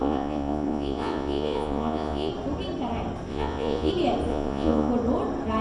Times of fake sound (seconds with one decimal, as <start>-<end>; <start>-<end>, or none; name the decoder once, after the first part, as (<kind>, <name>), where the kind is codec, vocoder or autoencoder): 0.0-2.3 (vocoder, Vocos); 3.3-3.9; 4.3-4.9